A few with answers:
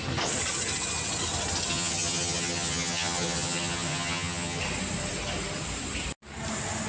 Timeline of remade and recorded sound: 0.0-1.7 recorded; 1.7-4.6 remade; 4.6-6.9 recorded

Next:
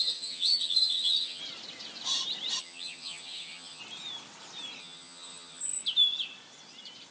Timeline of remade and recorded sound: 0.0-1.4 remade; 1.4-2.6 recorded; 2.6-3.8 remade; 3.8-4.8 recorded; 4.8-5.6 remade; 5.6-7.1 recorded

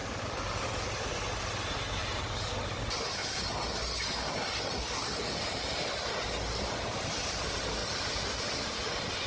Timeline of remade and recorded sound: 0.0-7.8 recorded; 7.8-8.8 remade; 8.8-9.3 recorded

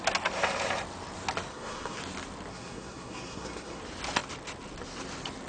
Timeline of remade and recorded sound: 0.0-1.5 recorded; 1.5-2.0 remade; 2.0-2.5 recorded; 2.5-3.8 remade; 3.8-5.5 recorded

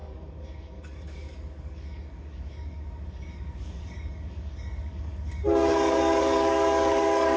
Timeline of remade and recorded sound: 0.0-7.4 remade

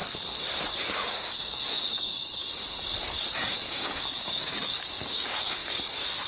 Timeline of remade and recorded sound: 0.0-0.9 recorded; 0.9-2.2 remade; 2.2-3.6 recorded; 3.6-5.6 remade; 5.6-6.3 recorded

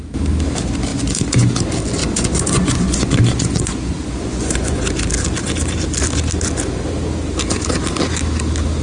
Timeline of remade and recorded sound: 0.0-0.9 recorded; 0.9-1.5 remade; 1.5-2.0 recorded; 2.0-4.8 remade; 4.8-8.8 recorded